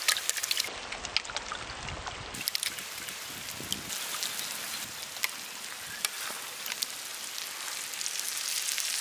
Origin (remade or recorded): recorded